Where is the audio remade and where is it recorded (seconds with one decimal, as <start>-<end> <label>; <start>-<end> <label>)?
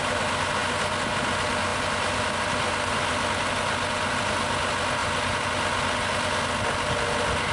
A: 0.0-7.5 recorded